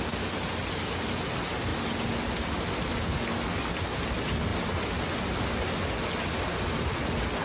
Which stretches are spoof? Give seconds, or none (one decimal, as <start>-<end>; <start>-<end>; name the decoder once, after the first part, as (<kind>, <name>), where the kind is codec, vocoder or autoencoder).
none

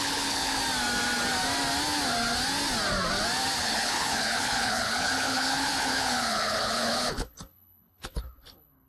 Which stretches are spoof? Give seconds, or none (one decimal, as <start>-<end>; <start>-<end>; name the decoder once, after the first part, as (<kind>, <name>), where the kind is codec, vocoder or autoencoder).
0.0-0.6 (codec, HILCodec); 3.6-8.9

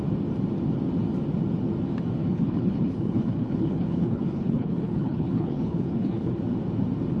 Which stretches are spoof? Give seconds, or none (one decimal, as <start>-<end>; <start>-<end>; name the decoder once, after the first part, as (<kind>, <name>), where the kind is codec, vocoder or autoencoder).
2.2-6.4 (codec, HILCodec)

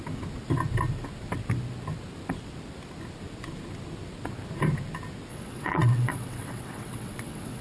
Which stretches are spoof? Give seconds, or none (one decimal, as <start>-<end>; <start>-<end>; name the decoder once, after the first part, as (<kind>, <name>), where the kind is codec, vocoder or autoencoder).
5.3-7.6 (vocoder, WaveNeXt)

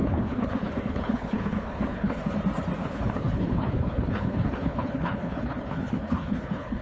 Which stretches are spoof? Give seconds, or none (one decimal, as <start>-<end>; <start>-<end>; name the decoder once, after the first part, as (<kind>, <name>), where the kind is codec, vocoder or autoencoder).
0.0-2.3 (codec, HILCodec); 2.8-6.8

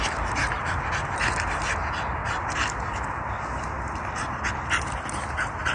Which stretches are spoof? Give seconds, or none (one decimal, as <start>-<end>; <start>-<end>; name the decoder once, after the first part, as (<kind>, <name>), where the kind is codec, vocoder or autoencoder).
none

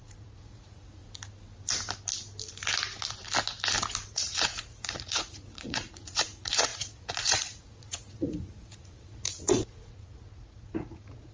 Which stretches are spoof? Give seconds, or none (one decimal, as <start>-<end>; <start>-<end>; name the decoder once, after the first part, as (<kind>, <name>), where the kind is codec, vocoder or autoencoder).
0.0-1.0 (vocoder, Vocos); 4.1-11.3